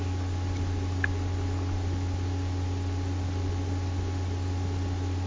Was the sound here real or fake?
real